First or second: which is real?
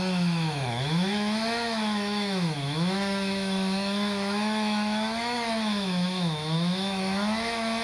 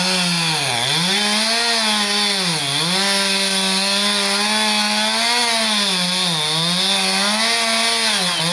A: second